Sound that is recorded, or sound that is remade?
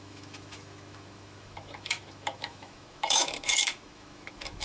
remade